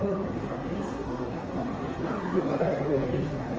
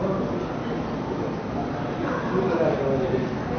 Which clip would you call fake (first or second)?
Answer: first